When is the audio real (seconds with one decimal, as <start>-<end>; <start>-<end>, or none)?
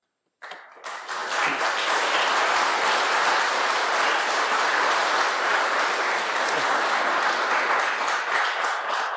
0.0-9.2